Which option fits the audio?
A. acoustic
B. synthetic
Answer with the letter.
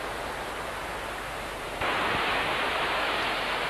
B